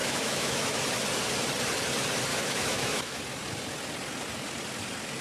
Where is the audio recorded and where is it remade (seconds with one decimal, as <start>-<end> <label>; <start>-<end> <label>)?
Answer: 0.0-0.8 remade; 0.8-2.3 recorded; 2.3-3.2 remade; 3.2-5.2 recorded